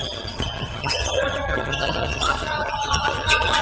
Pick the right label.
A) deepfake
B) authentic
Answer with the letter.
A